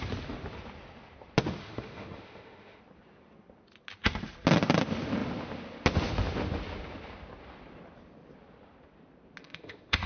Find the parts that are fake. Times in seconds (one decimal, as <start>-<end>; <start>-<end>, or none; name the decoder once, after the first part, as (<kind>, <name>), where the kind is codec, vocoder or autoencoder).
1.6-2.8 (autoencoder, DAC-VAE); 9.4-10.1